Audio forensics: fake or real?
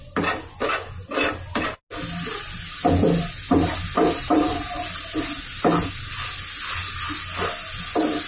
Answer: real